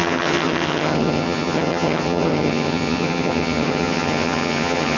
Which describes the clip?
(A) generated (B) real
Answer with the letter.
A